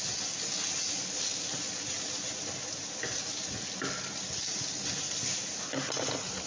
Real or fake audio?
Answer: real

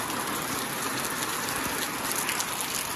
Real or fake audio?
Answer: real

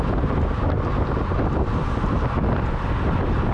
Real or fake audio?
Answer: real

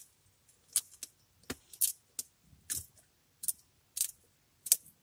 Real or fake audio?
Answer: real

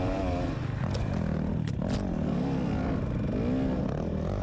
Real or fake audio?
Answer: real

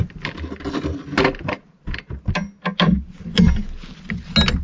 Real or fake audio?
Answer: real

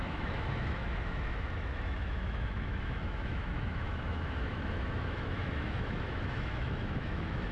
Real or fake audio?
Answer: fake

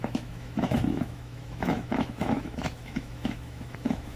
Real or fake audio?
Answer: fake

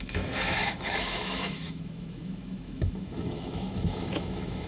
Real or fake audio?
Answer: fake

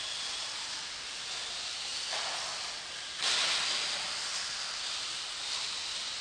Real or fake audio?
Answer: real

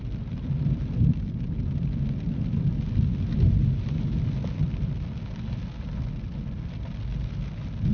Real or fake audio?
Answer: real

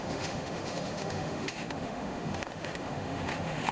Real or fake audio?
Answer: fake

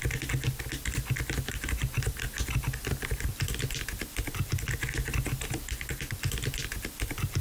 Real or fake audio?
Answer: real